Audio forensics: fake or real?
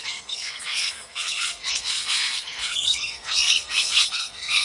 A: fake